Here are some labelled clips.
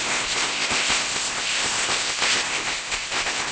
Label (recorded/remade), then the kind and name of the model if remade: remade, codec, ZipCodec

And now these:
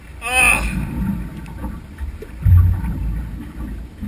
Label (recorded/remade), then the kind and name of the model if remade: recorded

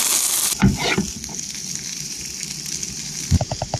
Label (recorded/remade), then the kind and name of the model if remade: recorded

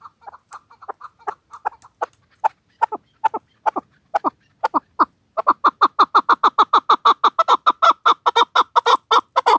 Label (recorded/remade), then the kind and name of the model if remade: recorded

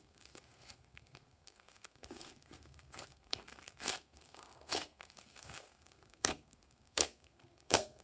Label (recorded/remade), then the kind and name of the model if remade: remade, codec, SNAC